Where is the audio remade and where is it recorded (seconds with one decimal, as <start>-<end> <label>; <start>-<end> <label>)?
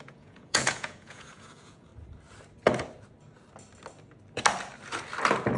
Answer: 0.0-1.9 remade; 1.9-5.6 recorded